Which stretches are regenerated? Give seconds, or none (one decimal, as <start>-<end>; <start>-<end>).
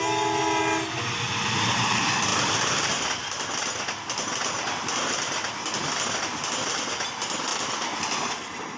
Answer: none